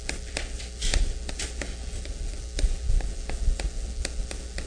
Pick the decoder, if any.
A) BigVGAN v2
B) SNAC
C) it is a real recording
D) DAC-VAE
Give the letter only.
C